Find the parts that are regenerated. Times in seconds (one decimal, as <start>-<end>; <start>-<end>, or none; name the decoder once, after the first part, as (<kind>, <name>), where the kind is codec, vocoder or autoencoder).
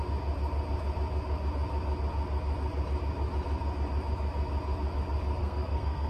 5.4-6.1 (codec, SNAC)